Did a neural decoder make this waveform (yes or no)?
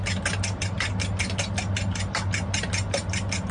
no